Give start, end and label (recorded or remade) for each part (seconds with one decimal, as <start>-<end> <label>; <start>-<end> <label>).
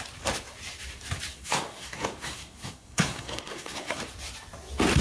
0.0-1.3 recorded; 1.3-4.0 remade; 4.0-5.0 recorded